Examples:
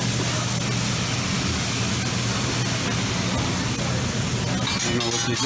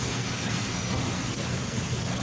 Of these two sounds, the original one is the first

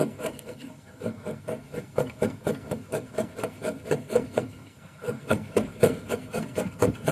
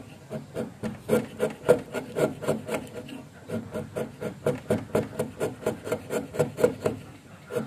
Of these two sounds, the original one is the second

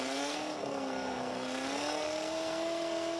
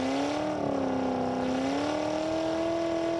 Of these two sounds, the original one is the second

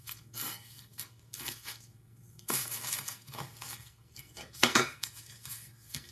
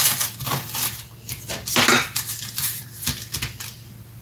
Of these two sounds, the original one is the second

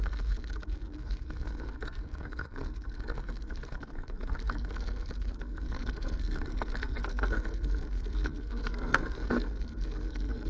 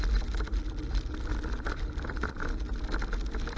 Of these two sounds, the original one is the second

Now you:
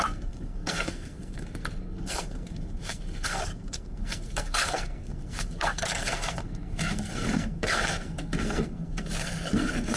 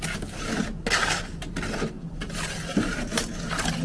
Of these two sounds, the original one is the second